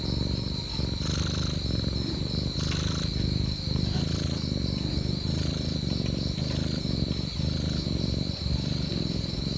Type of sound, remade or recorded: recorded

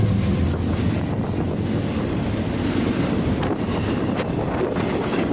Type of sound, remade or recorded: recorded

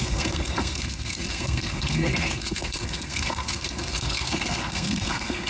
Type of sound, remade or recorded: remade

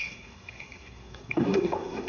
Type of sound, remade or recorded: remade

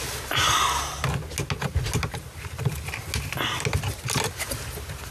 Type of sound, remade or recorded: recorded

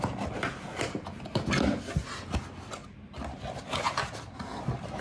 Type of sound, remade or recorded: recorded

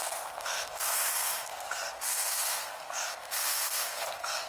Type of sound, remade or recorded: remade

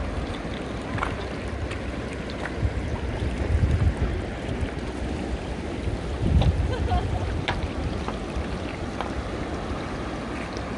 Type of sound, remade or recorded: recorded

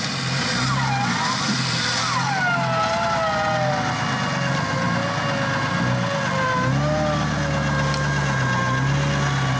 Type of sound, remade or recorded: recorded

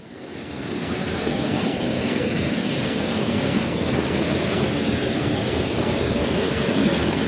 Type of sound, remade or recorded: remade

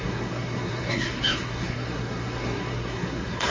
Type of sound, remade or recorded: remade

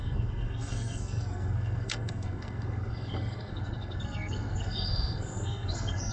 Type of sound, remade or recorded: remade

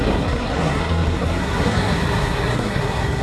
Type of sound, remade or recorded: remade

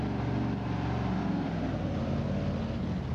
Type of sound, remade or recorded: recorded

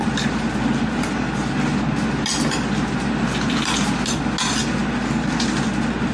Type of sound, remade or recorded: recorded